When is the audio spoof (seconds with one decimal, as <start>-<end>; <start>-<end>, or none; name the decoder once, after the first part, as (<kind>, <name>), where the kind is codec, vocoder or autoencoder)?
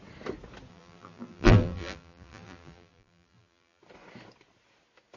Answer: 0.7-3.8 (vocoder, BigVGAN v2)